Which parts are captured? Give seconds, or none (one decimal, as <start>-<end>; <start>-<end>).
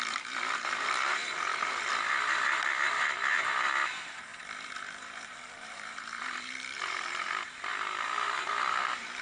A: 4.3-5.0